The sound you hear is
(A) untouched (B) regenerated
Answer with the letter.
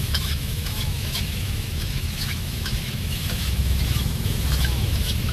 B